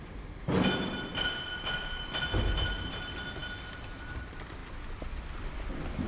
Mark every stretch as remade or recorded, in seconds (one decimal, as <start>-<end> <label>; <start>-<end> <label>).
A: 0.0-6.1 recorded